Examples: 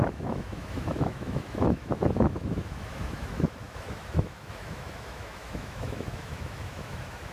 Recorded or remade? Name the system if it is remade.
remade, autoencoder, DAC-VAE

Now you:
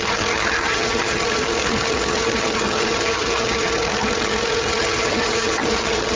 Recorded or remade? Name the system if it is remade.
remade, vocoder, HiFi-GAN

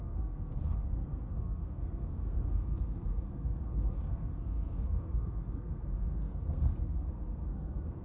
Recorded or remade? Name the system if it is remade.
remade, codec, SNAC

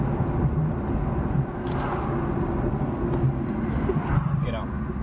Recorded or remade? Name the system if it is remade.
recorded